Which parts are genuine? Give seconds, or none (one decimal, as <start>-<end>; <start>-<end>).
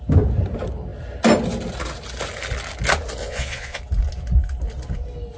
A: 0.0-3.2; 3.8-5.4